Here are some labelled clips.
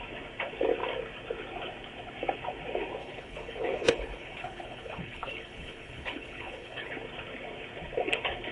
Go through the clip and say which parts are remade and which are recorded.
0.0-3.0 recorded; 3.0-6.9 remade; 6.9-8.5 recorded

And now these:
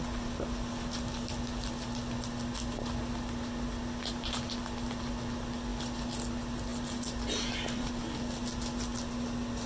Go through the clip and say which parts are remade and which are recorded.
0.0-9.7 recorded

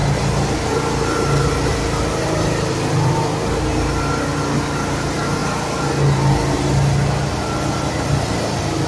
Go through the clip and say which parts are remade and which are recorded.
0.0-8.9 recorded

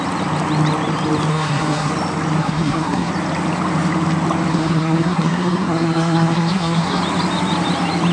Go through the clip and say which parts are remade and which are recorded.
0.0-1.3 recorded; 1.3-1.9 remade; 1.9-2.4 recorded; 2.4-3.1 remade; 3.1-4.5 recorded; 4.5-7.0 remade; 7.0-8.1 recorded